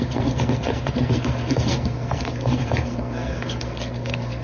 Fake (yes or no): yes